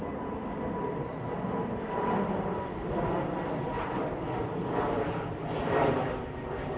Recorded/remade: recorded